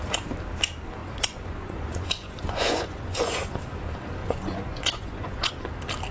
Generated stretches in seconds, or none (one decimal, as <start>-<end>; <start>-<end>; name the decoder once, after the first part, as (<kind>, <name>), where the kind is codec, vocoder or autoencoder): 1.0-3.3 (vocoder, Vocos); 4.2-5.5